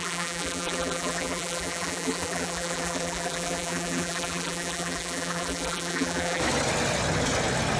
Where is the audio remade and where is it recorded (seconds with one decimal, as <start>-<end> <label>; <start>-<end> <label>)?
0.0-6.4 remade; 6.4-7.8 recorded